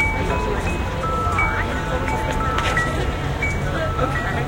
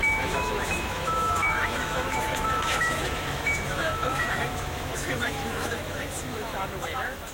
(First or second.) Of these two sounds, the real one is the first